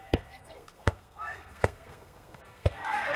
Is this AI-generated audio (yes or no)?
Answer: yes